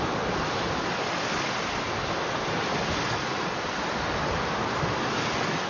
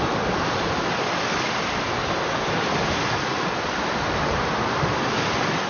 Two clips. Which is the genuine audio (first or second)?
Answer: first